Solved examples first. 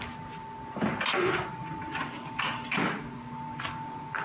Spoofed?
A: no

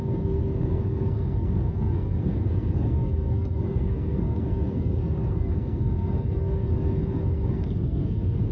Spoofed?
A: yes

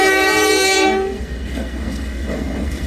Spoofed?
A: yes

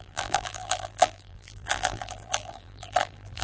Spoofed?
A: yes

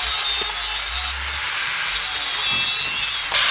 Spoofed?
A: no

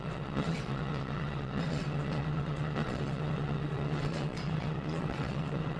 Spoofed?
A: yes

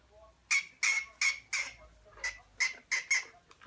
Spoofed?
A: no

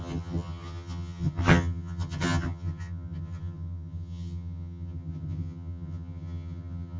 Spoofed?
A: yes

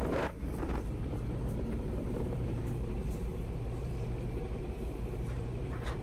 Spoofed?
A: yes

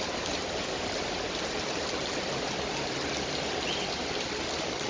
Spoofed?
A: no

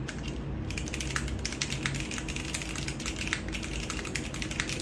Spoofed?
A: no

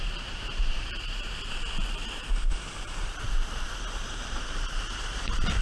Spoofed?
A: yes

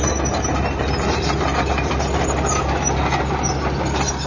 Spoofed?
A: no